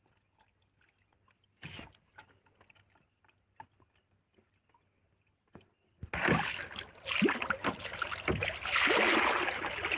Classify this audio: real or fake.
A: real